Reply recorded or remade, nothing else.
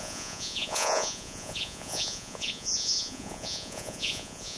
remade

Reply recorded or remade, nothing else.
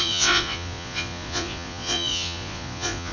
remade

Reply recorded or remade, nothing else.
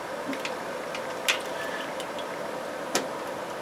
recorded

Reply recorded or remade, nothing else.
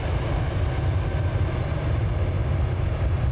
recorded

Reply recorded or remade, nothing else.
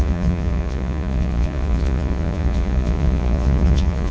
remade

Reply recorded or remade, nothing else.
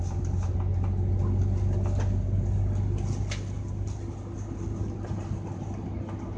recorded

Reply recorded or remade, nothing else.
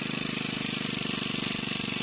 recorded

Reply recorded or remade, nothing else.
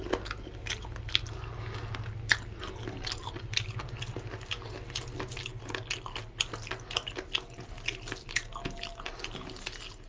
recorded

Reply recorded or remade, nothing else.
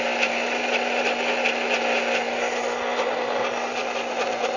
recorded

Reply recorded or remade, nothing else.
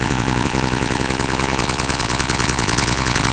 remade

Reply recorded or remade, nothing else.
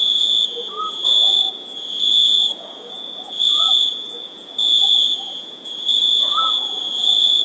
remade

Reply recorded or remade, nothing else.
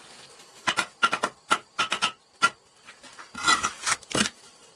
recorded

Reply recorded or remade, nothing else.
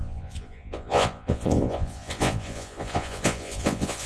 remade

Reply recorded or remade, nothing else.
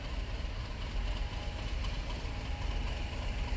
recorded